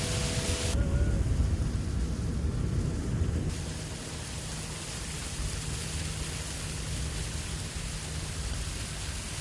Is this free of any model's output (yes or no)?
yes